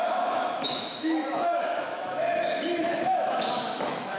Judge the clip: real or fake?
fake